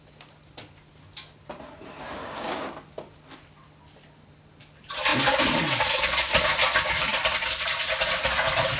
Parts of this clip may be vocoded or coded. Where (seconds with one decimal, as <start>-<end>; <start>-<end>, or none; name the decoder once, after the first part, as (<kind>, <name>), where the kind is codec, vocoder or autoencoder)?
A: 2.2-2.7 (codec, DAC)